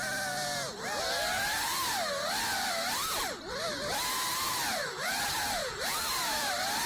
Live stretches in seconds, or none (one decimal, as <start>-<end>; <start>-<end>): 0.0-2.5